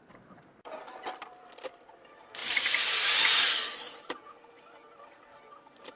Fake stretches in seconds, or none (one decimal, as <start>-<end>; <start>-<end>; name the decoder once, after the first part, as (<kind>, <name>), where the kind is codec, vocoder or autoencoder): 0.9-1.8 (vocoder, BigVGAN v2); 2.4-5.3